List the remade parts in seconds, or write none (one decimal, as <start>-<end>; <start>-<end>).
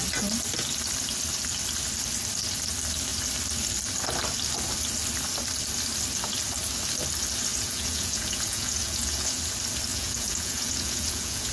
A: 7.5-9.4; 9.9-11.5